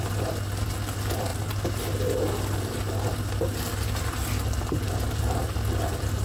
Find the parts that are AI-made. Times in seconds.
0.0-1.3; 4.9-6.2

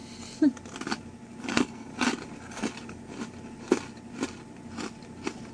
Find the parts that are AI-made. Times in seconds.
1.5-1.9

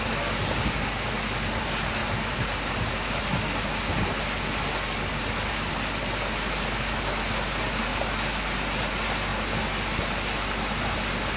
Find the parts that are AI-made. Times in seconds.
none

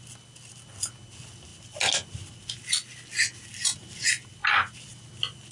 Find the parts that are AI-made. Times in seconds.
none

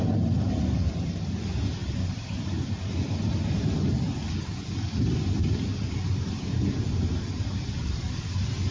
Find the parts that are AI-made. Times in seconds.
none